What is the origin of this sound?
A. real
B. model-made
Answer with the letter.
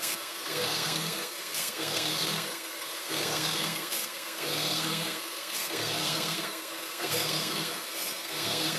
B